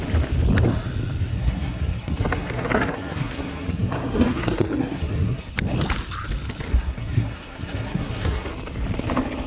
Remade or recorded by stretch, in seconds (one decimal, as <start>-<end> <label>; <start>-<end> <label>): 0.0-1.3 recorded; 1.3-5.5 remade; 5.5-6.7 recorded; 6.7-8.5 remade; 8.5-9.5 recorded